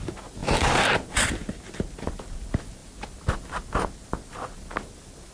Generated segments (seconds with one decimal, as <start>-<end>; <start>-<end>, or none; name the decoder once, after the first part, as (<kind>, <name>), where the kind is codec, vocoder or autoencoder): none